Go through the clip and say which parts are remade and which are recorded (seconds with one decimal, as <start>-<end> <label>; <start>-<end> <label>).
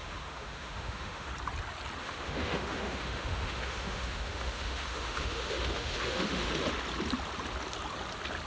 0.0-1.3 remade; 1.3-2.0 recorded; 2.0-6.5 remade; 6.5-8.5 recorded